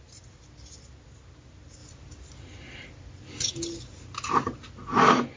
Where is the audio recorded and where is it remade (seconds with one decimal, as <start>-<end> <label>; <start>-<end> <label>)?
0.0-5.4 recorded